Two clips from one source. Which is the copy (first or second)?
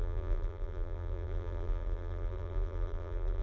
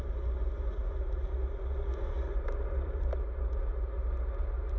first